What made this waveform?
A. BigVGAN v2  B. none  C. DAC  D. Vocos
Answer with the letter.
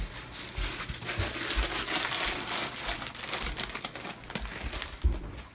B